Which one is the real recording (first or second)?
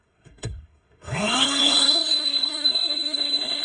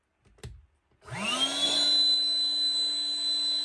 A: second